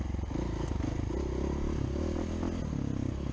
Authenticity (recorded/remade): recorded